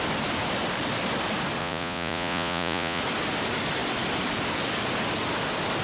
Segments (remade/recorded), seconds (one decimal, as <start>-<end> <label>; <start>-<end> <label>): 0.0-1.6 recorded; 1.6-3.0 remade; 3.0-5.8 recorded